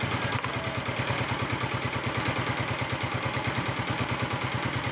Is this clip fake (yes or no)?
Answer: no